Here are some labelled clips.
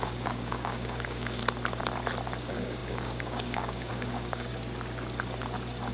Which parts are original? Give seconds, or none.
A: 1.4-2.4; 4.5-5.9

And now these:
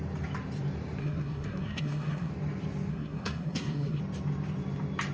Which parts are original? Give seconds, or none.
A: 0.0-1.0; 2.3-2.9; 4.0-5.1

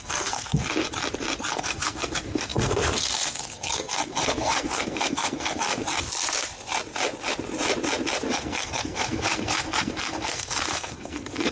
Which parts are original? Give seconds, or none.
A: 0.6-1.5; 5.8-8.3

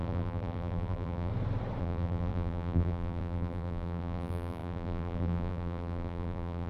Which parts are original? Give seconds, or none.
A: 1.3-1.8

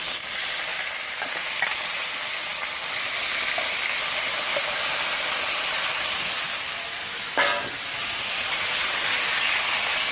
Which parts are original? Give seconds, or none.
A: 0.0-2.5; 7.0-10.1

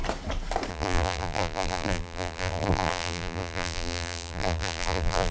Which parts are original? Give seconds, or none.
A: 0.0-0.7

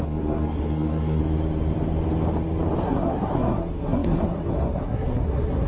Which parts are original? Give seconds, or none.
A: 1.2-2.8